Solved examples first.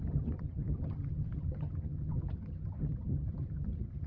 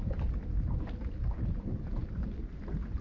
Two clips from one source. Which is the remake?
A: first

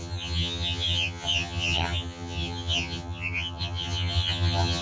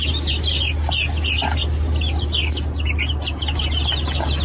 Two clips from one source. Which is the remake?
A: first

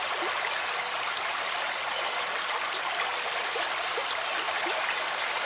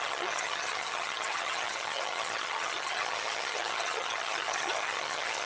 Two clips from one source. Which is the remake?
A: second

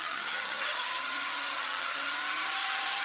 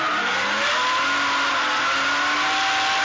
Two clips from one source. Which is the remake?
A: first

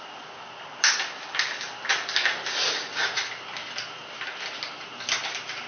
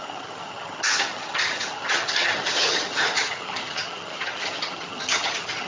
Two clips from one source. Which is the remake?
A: second